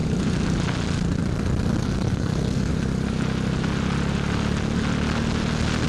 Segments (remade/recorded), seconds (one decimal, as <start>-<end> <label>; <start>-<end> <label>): 0.0-1.8 recorded; 1.8-2.7 remade; 2.7-5.9 recorded